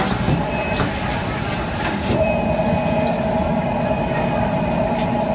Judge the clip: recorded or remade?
recorded